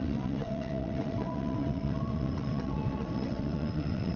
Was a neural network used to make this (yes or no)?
yes